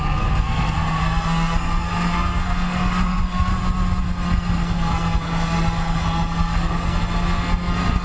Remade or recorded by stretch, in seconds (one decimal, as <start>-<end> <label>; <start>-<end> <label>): 0.0-3.5 remade; 3.5-4.0 recorded; 4.0-8.0 remade